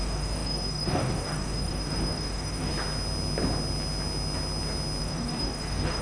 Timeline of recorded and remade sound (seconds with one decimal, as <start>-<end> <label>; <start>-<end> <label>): 0.0-2.7 remade; 2.7-5.0 recorded; 5.0-6.0 remade